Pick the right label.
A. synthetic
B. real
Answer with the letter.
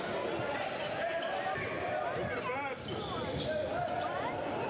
B